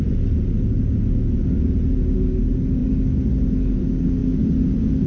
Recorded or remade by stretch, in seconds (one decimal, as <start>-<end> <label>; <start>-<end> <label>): 0.0-5.1 recorded